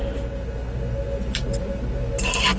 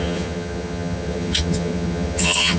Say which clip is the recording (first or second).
first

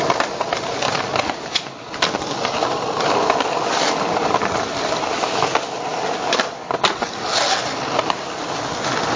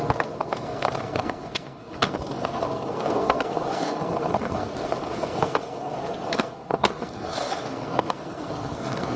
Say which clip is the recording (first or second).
first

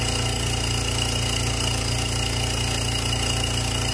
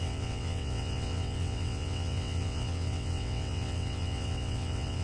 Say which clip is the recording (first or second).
first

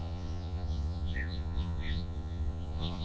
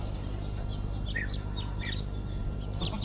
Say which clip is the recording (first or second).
second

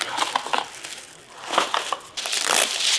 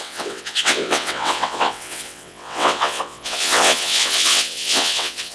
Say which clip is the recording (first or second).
first